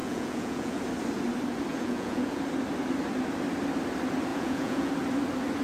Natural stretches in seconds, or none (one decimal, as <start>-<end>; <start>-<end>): 0.8-1.7; 2.4-4.3; 4.9-5.6